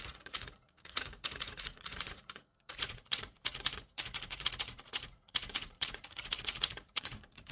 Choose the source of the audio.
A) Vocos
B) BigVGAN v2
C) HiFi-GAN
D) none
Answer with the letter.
A